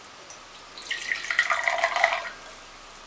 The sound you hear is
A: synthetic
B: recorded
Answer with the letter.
B